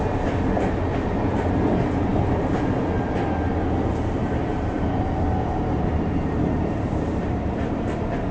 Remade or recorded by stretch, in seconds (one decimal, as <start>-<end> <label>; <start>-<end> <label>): 0.0-4.2 recorded; 4.2-7.5 remade; 7.5-8.3 recorded